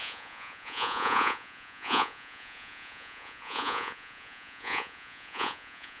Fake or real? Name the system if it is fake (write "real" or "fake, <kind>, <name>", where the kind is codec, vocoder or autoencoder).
fake, vocoder, Vocos